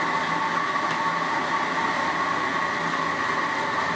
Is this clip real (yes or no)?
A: yes